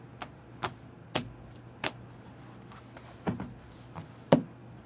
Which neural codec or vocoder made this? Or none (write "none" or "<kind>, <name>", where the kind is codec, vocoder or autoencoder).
none